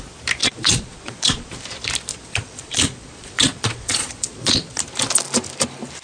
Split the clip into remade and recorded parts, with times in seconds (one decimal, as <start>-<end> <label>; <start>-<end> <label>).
0.0-0.4 recorded; 0.4-1.5 remade; 1.5-2.1 recorded; 2.1-4.8 remade; 4.8-6.0 recorded